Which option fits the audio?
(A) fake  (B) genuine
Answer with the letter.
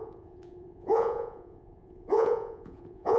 A